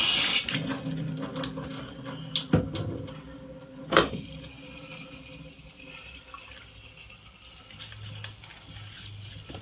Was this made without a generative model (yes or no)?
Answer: yes